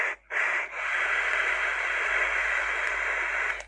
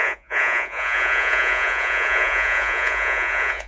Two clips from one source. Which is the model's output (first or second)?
second